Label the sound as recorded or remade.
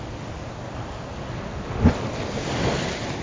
recorded